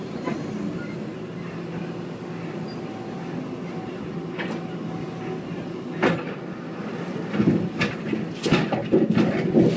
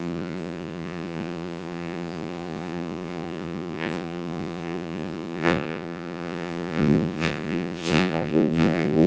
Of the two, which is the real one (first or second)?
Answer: first